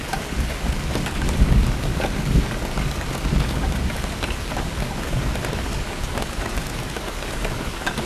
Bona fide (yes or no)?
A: no